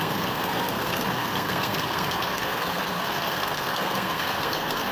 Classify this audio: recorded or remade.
remade